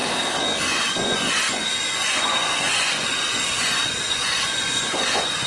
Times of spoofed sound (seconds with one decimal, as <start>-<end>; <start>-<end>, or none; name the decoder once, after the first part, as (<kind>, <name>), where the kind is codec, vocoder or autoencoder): 0.6-5.5 (vocoder, Vocos)